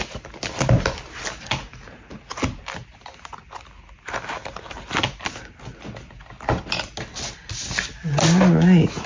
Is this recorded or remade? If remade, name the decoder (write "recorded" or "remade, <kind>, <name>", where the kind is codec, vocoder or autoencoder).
recorded